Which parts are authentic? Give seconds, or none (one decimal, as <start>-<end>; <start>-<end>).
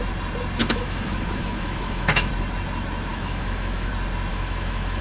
0.0-0.6; 2.3-3.1; 3.9-4.3